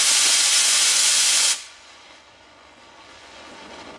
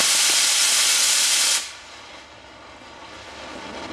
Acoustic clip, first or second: second